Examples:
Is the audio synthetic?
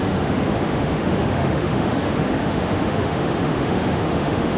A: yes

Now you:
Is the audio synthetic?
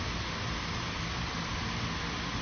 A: no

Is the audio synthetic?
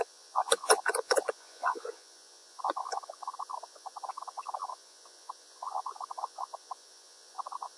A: yes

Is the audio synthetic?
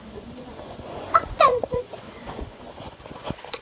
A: yes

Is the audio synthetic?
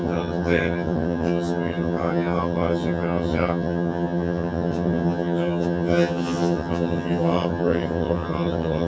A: yes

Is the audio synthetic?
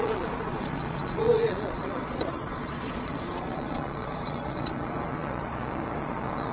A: yes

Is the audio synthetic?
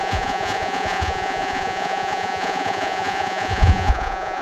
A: yes